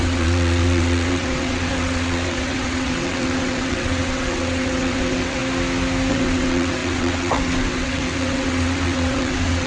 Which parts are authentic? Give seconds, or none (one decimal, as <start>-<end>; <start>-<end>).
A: 5.4-6.1